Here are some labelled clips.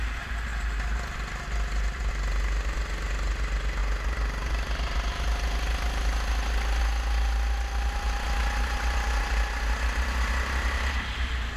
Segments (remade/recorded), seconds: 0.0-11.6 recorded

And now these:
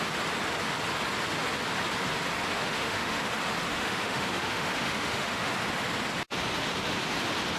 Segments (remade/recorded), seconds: 0.0-2.6 recorded; 2.6-3.3 remade; 3.3-3.7 recorded; 3.7-5.5 remade; 5.5-7.6 recorded